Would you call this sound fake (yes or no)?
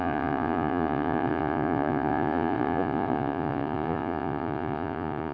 yes